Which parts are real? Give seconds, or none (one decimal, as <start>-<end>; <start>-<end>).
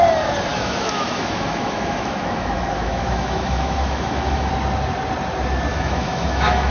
0.0-0.5; 4.5-5.7